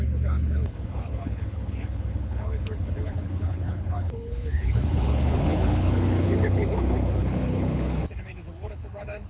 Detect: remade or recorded remade